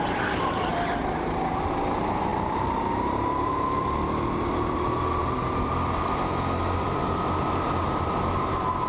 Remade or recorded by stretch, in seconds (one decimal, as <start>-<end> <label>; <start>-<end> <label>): 0.0-8.9 remade

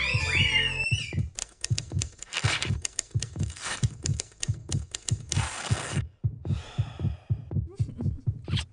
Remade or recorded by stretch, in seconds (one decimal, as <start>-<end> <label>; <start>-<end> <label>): 0.0-1.4 recorded; 1.4-6.2 remade; 6.2-8.7 recorded

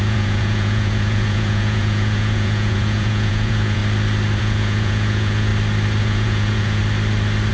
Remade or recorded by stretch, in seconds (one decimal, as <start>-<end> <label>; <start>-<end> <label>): 0.0-3.8 remade; 3.8-4.4 recorded; 4.4-5.5 remade; 5.5-6.0 recorded; 6.0-6.8 remade; 6.8-7.5 recorded

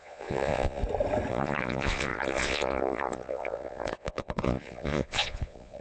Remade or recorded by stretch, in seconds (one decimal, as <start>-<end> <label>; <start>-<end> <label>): 0.0-0.8 remade; 0.8-1.3 recorded; 1.3-5.8 remade

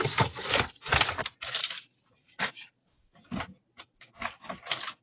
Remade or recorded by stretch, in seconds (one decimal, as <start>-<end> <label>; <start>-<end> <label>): 0.0-1.6 recorded; 1.6-4.2 remade; 4.2-5.0 recorded